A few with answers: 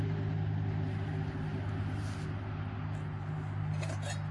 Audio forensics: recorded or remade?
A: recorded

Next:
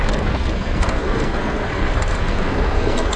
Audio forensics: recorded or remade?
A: remade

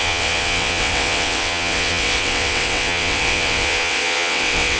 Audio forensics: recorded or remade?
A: remade